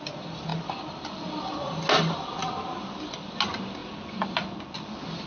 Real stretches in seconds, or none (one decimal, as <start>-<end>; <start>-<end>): 0.0-5.3